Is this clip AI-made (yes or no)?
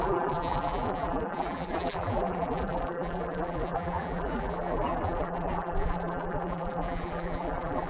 yes